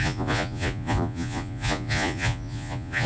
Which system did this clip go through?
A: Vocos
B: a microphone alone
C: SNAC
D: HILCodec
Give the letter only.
A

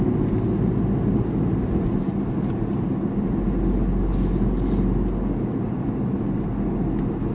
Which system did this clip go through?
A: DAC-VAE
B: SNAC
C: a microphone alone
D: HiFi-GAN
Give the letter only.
C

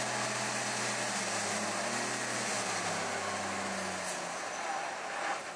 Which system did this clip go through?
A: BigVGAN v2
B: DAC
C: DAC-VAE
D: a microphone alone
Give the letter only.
D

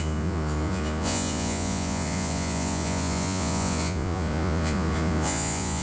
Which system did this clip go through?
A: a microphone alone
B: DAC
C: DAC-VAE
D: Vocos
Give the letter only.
D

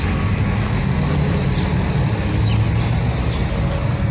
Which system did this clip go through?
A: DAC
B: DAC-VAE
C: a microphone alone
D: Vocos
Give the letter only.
C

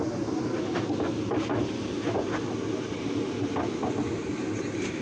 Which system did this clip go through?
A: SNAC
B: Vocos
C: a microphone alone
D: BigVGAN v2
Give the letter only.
C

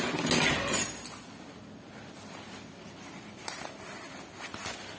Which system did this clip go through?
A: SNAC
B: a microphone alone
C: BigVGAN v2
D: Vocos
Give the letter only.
B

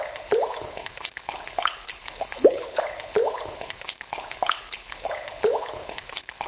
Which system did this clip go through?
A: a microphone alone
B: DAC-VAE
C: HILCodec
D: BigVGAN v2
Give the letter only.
C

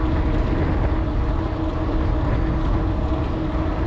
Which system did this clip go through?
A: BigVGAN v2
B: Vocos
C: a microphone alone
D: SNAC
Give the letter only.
C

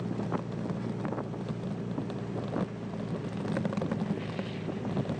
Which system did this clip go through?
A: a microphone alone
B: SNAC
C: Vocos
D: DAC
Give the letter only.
A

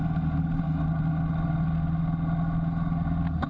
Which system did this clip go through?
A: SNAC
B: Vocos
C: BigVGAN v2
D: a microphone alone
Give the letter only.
D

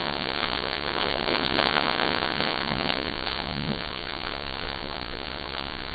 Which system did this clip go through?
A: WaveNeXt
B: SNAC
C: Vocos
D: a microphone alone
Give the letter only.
A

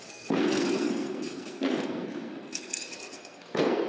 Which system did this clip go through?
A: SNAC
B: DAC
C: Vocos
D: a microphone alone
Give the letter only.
A